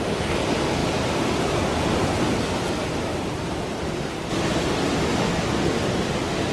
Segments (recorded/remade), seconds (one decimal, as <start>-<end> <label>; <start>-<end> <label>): 0.0-0.8 recorded; 0.8-2.1 remade; 2.1-3.1 recorded; 3.1-4.2 remade; 4.2-6.5 recorded